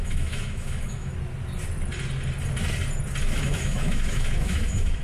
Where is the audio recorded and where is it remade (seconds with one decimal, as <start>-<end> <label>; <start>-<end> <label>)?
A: 0.0-1.1 remade; 1.1-3.2 recorded; 3.2-5.0 remade